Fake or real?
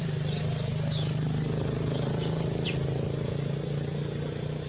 real